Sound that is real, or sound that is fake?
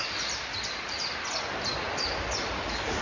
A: fake